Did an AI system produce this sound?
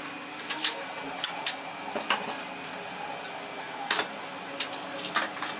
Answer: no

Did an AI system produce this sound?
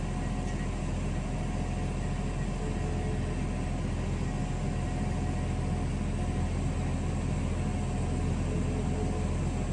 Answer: no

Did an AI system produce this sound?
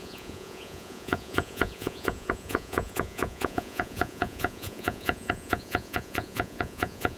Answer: yes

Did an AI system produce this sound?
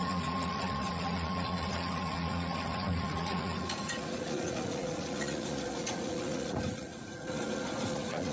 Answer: yes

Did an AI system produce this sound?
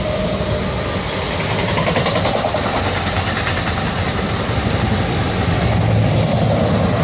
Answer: no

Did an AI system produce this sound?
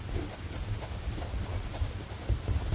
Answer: no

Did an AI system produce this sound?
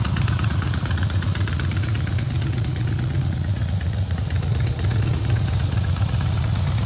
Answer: yes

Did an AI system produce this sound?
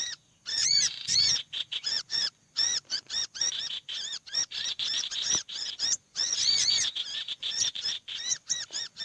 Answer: yes